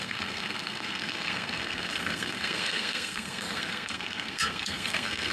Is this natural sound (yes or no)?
no